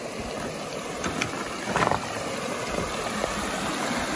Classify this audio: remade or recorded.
recorded